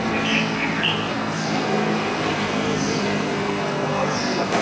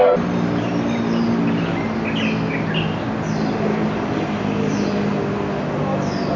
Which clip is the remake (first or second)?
first